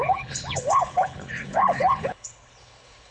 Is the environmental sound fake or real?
fake